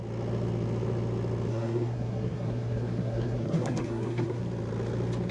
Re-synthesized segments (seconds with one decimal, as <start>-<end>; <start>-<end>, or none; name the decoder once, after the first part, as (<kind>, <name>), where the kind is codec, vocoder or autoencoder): 1.5-4.4 (codec, SNAC)

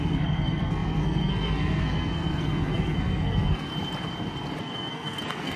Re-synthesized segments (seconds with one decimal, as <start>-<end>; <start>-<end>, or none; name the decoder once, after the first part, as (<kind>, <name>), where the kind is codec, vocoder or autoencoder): 0.0-3.7 (codec, SNAC); 4.6-5.6